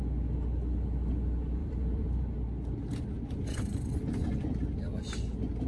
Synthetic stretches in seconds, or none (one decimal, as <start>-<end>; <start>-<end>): 1.6-2.2

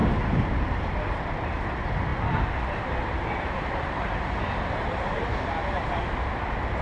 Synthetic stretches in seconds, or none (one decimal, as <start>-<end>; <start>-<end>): 0.0-1.5; 2.1-6.0

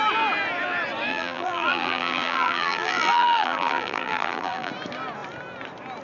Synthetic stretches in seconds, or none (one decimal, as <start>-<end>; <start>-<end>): 1.1-4.7

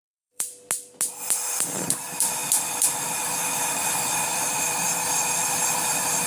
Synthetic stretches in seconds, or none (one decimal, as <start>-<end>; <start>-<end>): 0.0-0.5; 1.1-6.3

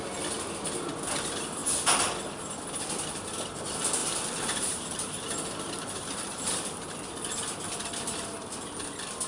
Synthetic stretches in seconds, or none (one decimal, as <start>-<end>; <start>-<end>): 4.0-6.7